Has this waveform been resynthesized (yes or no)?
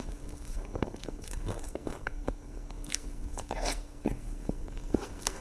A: yes